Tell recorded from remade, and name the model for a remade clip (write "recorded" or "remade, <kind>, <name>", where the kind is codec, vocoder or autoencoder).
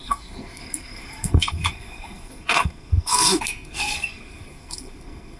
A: remade, codec, SNAC